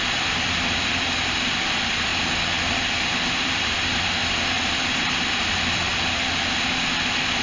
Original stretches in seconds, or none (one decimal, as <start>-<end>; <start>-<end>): 2.1-3.4; 4.2-4.9; 5.9-7.0